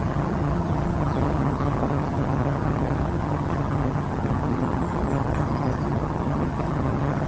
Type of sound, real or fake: fake